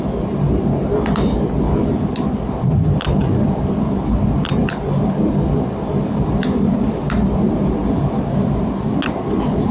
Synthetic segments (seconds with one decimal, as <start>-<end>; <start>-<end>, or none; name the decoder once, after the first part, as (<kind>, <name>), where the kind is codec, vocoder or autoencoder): none

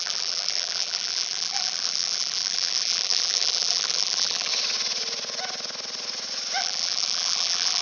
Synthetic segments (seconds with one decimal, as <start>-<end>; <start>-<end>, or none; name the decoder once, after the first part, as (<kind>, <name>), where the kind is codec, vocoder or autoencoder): 0.0-4.5 (vocoder, BigVGAN v2); 6.6-7.8

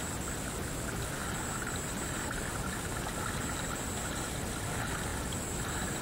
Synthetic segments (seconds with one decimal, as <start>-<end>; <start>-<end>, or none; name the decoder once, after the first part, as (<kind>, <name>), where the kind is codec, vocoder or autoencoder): 5.1-6.0 (vocoder, BigVGAN v2)

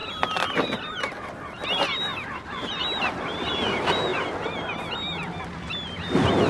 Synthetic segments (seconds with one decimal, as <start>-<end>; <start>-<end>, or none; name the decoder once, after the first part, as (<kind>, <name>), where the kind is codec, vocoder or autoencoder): 0.0-0.6 (vocoder, BigVGAN v2)

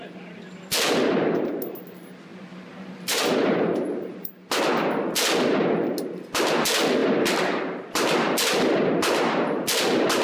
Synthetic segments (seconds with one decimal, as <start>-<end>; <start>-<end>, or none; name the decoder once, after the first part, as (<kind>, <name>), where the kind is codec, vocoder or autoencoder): 2.3-3.3 (vocoder, BigVGAN v2); 3.9-4.6